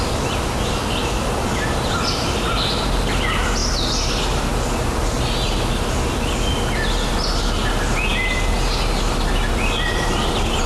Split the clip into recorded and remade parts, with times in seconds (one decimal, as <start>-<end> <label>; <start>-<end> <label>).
0.0-10.7 recorded